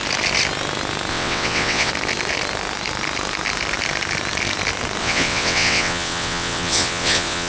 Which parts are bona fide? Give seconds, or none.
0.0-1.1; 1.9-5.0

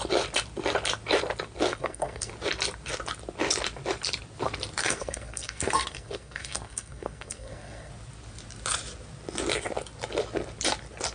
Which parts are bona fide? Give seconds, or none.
0.0-1.7; 2.3-4.8; 7.9-11.1

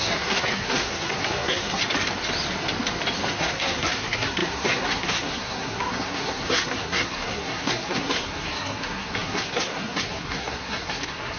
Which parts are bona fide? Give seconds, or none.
1.8-3.4

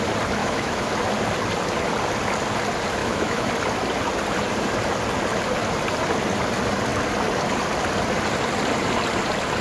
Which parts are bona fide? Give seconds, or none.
0.0-0.4; 0.9-3.0; 3.5-9.6

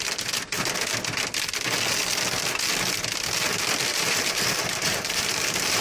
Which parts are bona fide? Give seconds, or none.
0.0-3.9

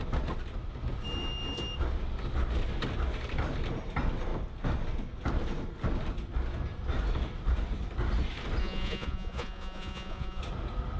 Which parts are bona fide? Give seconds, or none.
0.0-8.6; 10.4-11.0

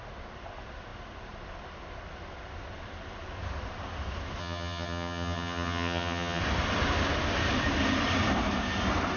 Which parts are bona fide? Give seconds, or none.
0.0-4.4; 6.4-9.2

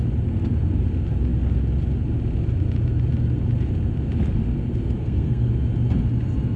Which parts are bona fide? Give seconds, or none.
0.0-5.0; 5.5-6.6